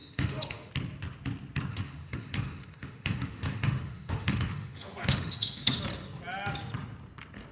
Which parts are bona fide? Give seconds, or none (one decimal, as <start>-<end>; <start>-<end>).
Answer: 0.7-1.7; 5.8-7.5